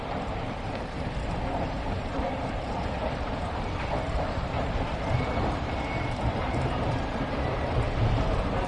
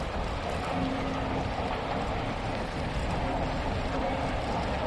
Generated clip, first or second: first